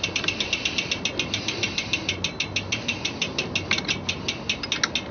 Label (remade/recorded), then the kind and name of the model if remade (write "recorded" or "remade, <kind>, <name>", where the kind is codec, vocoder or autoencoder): recorded